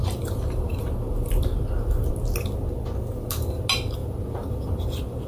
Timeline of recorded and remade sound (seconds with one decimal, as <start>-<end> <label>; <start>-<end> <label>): 0.0-2.1 remade; 2.1-4.0 recorded; 4.0-5.3 remade